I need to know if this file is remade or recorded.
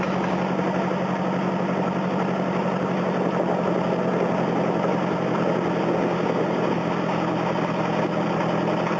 recorded